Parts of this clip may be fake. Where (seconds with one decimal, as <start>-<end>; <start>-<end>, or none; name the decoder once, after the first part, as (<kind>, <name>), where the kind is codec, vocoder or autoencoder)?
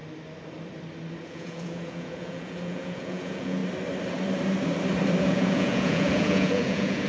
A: 1.2-3.6 (vocoder, Vocos); 5.2-7.1